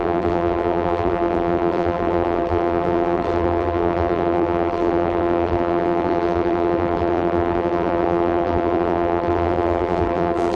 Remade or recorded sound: remade